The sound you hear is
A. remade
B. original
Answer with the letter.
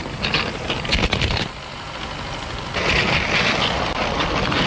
B